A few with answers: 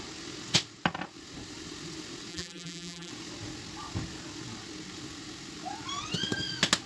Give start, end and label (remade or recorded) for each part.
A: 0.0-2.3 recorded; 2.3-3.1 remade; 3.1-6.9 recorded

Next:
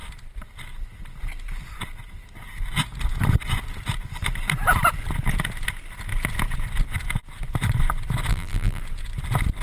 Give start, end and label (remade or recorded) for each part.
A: 0.0-8.3 recorded; 8.3-8.8 remade; 8.8-9.6 recorded

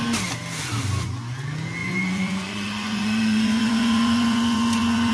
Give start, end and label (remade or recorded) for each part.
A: 0.0-1.8 recorded; 1.8-5.1 remade

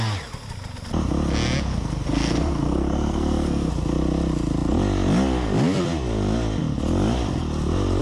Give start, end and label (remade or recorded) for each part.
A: 0.0-1.7 recorded; 1.7-3.7 remade; 3.7-8.0 recorded